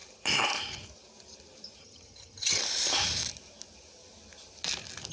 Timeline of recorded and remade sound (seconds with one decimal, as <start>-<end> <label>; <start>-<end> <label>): 0.0-1.8 recorded; 1.8-2.6 remade; 2.6-5.1 recorded